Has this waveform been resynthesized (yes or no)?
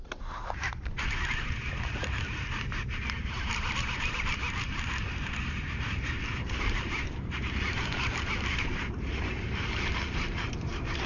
yes